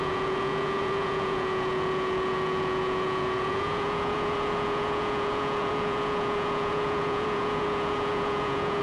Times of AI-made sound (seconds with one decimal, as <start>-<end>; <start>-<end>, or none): 0.0-8.8